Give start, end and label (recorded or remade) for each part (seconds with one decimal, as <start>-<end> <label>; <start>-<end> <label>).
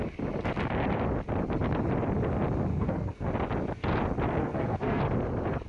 0.0-2.7 recorded; 2.7-3.3 remade; 3.3-4.4 recorded; 4.4-5.0 remade; 5.0-5.7 recorded